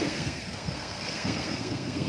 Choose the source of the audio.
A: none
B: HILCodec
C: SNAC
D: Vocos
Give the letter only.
C